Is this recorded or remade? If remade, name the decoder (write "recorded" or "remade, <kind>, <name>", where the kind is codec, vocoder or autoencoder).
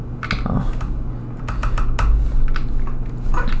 recorded